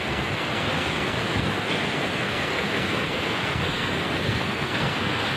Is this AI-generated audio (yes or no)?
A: yes